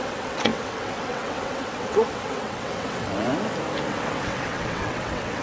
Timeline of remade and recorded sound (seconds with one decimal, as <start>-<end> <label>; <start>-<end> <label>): 0.0-3.3 remade; 3.3-3.9 recorded; 3.9-5.4 remade